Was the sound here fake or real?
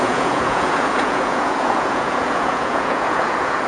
fake